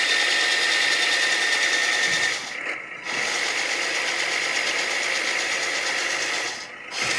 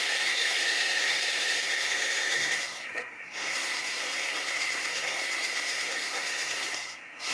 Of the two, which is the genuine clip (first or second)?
first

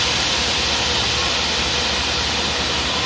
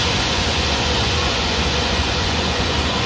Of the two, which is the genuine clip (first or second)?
first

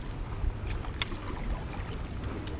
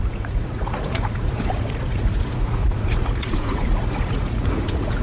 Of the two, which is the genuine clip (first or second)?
first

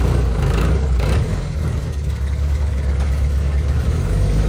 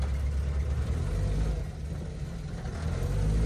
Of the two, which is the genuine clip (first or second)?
second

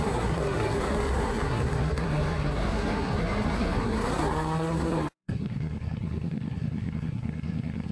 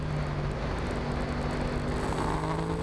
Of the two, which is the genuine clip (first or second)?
second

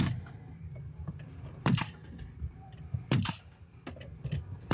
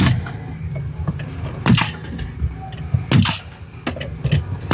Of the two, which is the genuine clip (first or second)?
second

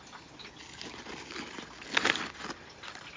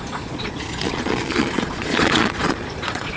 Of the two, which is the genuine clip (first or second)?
first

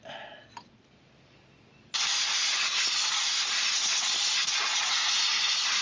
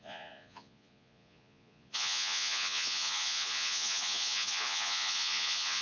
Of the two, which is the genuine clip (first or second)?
first